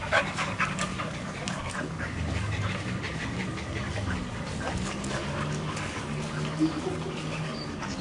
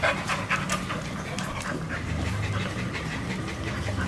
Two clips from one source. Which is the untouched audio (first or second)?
second